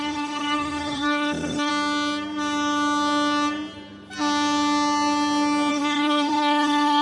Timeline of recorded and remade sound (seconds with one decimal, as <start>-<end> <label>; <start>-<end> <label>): 0.0-1.7 remade; 1.7-5.7 recorded; 5.7-7.0 remade